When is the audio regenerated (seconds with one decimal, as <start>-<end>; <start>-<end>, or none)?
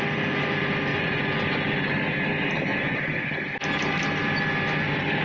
0.9-1.4; 2.7-3.3